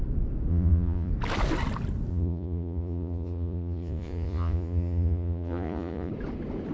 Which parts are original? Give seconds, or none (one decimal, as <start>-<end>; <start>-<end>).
0.0-0.5; 1.1-2.1; 6.1-6.7